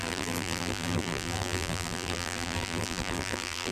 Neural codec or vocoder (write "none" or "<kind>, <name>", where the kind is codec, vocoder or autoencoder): vocoder, BigVGAN v2